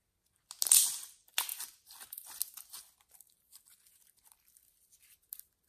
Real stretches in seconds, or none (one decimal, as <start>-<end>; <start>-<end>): 0.0-1.5; 4.9-5.7